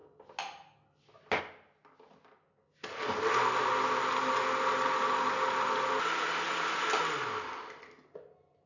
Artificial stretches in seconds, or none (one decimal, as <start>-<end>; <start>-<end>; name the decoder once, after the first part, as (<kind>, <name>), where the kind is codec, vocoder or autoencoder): none